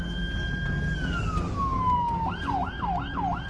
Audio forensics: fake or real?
real